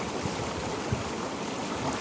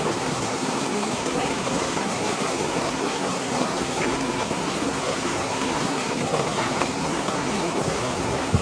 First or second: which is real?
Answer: first